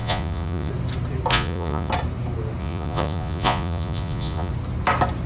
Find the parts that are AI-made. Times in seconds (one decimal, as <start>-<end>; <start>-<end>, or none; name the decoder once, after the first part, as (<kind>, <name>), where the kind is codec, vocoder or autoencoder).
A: 0.0-0.7 (vocoder, Vocos); 1.3-1.9; 2.6-4.5